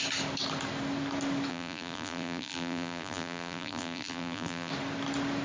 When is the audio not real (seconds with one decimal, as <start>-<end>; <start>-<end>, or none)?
1.5-4.7

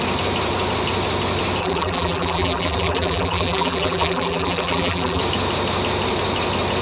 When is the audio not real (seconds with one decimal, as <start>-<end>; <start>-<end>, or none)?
1.6-5.2

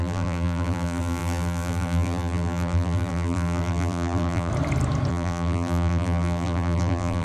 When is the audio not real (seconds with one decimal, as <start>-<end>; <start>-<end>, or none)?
0.0-4.5; 5.1-7.2